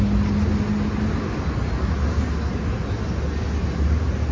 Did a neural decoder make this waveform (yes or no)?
no